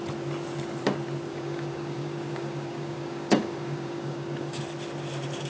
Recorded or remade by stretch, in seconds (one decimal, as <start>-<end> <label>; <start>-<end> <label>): 0.0-1.3 recorded; 1.3-4.6 remade; 4.6-5.5 recorded